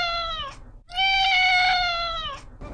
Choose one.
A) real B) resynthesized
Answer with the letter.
A